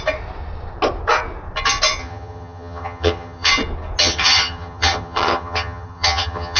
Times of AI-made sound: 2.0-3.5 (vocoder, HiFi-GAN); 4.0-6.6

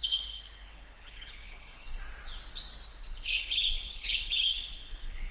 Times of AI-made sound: 0.0-2.0 (codec, HILCodec); 2.9-5.3

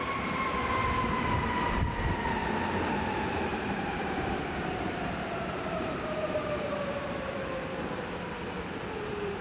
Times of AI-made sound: 3.5-7.3 (vocoder, BigVGAN v2)